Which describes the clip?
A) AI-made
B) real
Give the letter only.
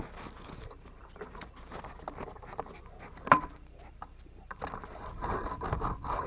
B